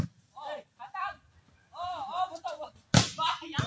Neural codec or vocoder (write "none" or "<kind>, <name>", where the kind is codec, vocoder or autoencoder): none